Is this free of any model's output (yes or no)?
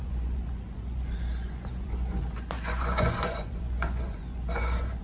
no